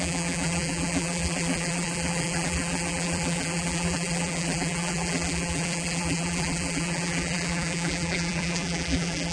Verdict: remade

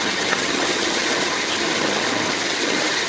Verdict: remade